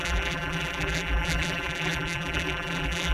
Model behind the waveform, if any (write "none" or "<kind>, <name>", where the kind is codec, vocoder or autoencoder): vocoder, BigVGAN v2